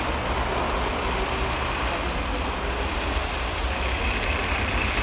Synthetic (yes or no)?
no